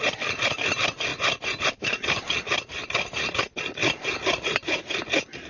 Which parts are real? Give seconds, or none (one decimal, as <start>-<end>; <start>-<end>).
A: 0.0-5.5